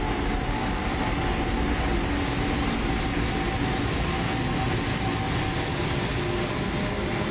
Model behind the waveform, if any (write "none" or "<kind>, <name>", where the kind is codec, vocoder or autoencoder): none